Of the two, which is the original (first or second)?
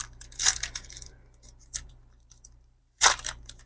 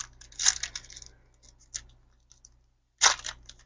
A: second